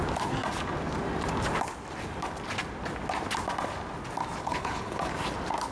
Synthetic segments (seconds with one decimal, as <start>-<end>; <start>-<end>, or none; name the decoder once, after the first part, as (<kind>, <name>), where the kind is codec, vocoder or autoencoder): 4.4-5.1 (codec, HILCodec)